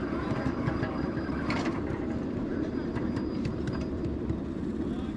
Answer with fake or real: fake